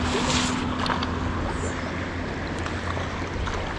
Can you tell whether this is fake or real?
real